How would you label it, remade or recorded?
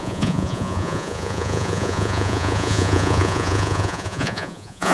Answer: remade